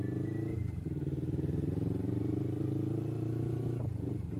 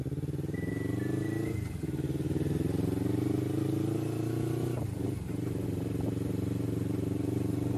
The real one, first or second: second